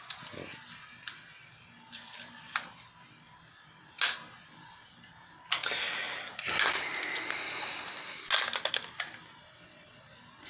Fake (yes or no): no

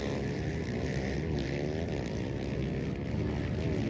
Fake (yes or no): no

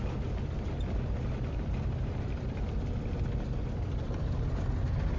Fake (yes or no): no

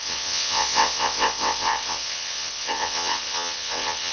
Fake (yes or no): yes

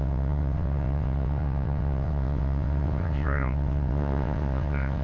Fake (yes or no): yes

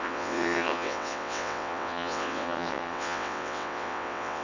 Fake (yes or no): yes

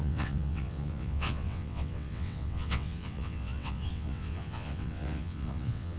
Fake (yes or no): yes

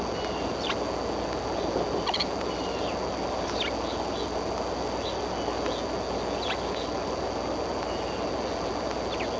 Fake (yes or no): no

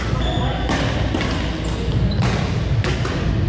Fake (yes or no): no